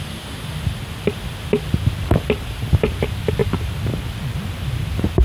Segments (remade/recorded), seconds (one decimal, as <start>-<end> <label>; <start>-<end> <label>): 0.0-5.2 recorded